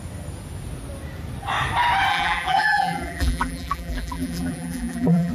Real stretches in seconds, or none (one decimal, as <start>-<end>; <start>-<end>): 0.0-2.1